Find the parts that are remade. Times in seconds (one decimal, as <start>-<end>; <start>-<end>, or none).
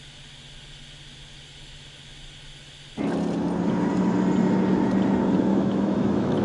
5.5-6.4